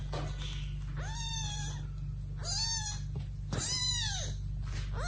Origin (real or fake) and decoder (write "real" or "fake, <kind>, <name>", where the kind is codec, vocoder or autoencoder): real